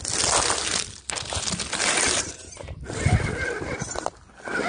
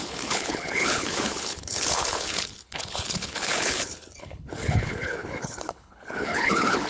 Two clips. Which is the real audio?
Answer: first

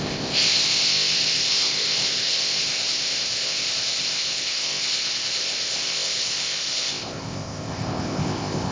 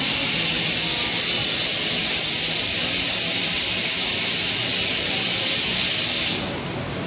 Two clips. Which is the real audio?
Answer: second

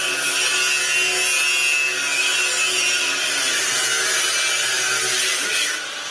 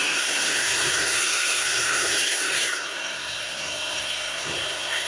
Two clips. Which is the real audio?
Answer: first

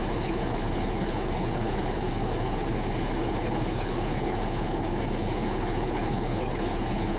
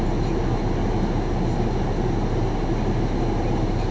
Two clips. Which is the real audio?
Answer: second